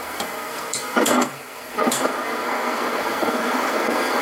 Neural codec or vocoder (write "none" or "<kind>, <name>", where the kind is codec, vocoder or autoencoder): codec, SNAC